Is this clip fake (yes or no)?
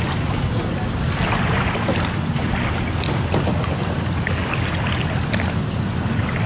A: no